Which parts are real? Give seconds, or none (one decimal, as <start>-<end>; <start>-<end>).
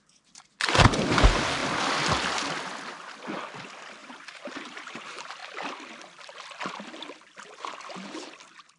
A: 0.0-4.0; 5.0-8.8